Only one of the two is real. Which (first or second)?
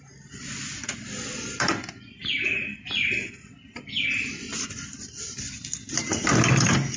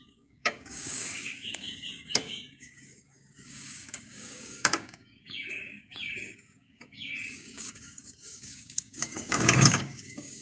first